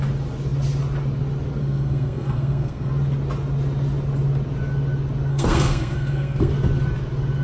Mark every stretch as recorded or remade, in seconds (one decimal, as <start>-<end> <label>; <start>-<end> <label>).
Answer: 0.0-1.6 recorded; 1.6-2.9 remade; 2.9-5.3 recorded; 5.3-6.5 remade; 6.5-7.4 recorded